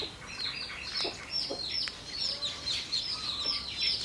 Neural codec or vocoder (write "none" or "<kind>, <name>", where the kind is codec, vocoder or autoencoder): none